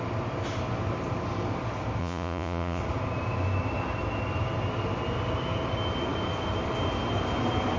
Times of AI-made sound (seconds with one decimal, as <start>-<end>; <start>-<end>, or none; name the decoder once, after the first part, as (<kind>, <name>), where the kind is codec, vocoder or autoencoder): 2.0-2.8 (vocoder, Vocos)